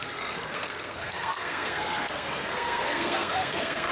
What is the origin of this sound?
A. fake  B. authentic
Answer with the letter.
A